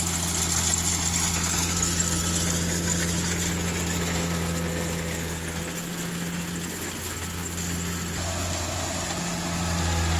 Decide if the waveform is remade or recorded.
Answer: recorded